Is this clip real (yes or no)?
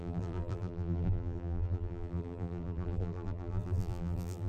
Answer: no